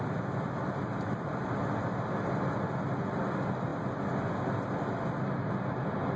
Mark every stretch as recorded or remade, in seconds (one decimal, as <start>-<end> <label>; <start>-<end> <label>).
0.0-6.2 recorded